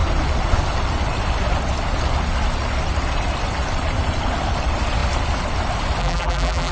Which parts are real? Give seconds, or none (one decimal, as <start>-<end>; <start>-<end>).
0.0-6.0